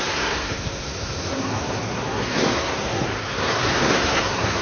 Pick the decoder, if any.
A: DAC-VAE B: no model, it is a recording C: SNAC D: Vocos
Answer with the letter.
C